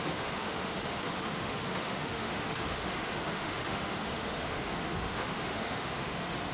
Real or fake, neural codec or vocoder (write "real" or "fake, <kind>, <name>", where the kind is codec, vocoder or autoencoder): fake, autoencoder, DAC-VAE